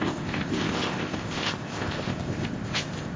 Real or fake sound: fake